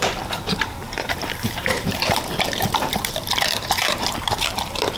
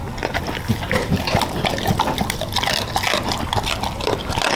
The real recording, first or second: second